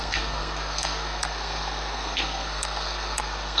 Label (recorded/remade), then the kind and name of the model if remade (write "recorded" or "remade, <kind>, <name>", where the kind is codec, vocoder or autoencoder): remade, codec, SNAC